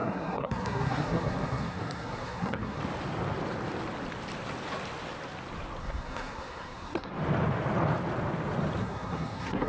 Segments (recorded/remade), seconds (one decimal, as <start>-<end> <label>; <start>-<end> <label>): 0.0-2.8 remade; 2.8-5.8 recorded; 5.8-7.1 remade; 7.1-8.8 recorded; 8.8-9.7 remade